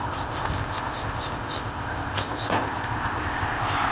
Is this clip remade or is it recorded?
remade